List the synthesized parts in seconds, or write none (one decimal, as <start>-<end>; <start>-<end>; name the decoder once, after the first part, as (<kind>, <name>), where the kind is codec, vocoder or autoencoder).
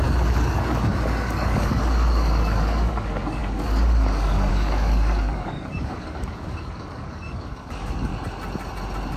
0.0-8.1 (codec, DAC)